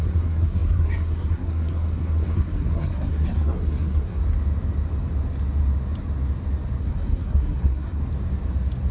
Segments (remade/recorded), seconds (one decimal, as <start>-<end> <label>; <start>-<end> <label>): 0.0-4.2 remade; 4.2-6.8 recorded; 6.8-8.0 remade; 8.0-8.9 recorded